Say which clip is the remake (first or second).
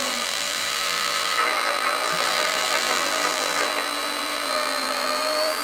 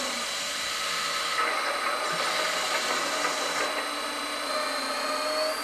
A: first